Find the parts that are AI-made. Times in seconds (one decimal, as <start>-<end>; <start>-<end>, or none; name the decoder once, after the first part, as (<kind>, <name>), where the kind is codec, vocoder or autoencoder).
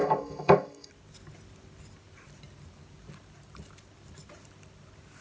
0.0-0.9 (codec, DAC)